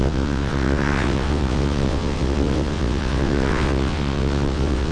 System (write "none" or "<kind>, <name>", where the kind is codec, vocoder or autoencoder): vocoder, WaveNeXt